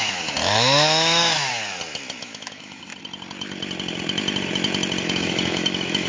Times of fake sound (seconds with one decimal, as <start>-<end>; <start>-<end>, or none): 0.0-1.5; 2.2-2.9; 5.0-6.1

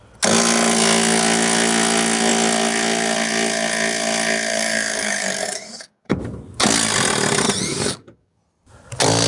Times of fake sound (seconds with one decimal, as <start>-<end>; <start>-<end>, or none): 4.5-6.2; 7.7-8.4

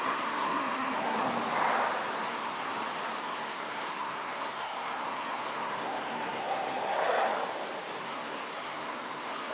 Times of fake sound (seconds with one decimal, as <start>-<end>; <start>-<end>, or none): 0.0-1.3; 2.1-2.7; 3.2-7.3; 8.0-9.5

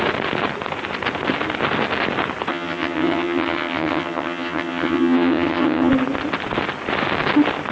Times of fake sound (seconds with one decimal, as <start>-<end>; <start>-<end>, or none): 2.5-5.9

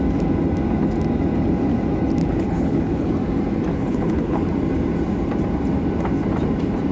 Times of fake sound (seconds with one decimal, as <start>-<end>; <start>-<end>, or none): 2.2-3.1; 3.7-4.4

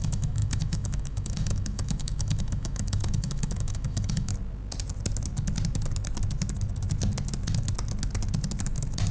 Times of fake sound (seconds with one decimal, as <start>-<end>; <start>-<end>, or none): 0.0-4.3

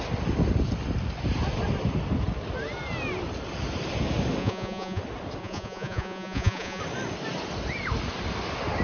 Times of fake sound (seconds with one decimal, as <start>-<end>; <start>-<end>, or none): 4.4-5.0; 5.4-6.8